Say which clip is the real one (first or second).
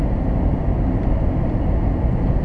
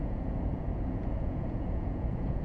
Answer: first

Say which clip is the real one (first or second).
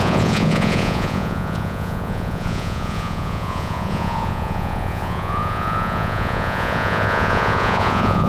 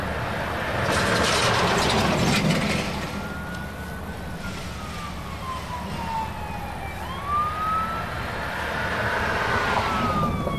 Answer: second